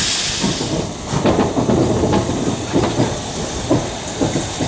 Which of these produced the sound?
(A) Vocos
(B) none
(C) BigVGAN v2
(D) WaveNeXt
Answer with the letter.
B